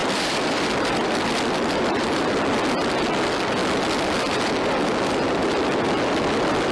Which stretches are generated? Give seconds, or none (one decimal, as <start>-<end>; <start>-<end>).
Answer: 0.0-2.2

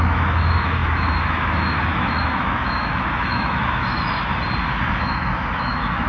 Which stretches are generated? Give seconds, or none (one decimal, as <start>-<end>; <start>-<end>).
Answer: 0.0-4.3; 4.9-6.1

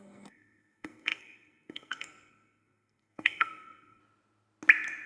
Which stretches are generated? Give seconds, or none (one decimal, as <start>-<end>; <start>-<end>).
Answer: 0.0-4.0